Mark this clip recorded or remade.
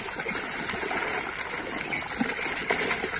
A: recorded